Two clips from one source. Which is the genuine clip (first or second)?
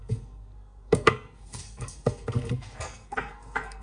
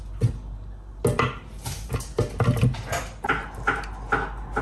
second